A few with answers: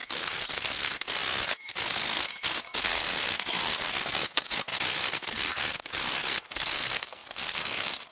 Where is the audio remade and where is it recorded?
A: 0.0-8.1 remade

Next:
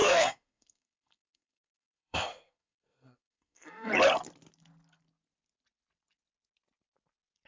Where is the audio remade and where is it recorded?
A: 0.0-3.9 remade; 3.9-7.5 recorded